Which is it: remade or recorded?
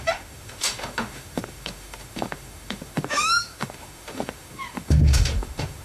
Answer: remade